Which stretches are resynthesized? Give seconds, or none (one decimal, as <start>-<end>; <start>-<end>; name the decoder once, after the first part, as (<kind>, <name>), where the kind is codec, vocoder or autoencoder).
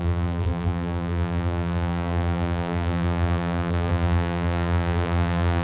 0.0-5.6 (vocoder, BigVGAN v2)